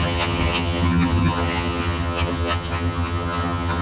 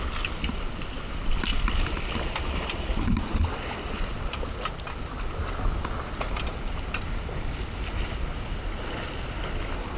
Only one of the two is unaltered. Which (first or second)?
second